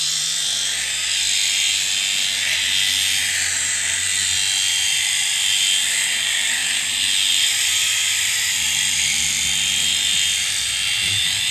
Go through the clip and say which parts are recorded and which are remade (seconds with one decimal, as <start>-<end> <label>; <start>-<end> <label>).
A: 0.0-1.7 remade; 1.7-4.7 recorded; 4.7-6.6 remade; 6.6-7.3 recorded; 7.3-11.5 remade